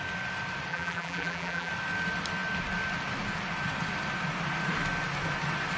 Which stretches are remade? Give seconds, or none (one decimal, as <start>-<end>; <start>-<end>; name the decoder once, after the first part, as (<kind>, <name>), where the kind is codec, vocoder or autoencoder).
0.7-1.7 (vocoder, BigVGAN v2)